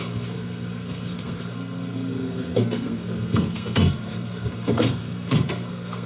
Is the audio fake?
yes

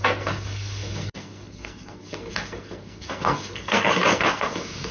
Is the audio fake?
yes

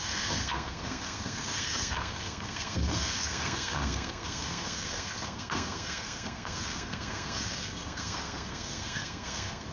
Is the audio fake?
yes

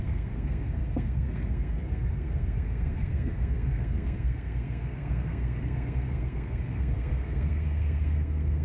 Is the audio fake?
yes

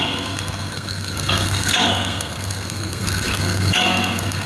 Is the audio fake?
yes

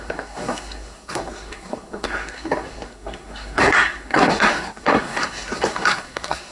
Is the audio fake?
yes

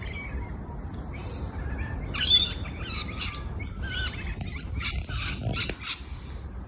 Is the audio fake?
no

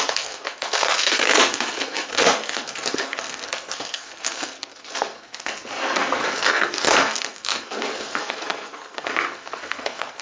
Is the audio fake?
yes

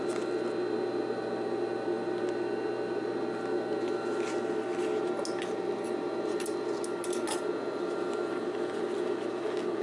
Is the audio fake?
no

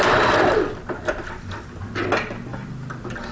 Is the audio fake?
no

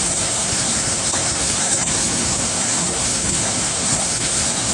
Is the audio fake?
yes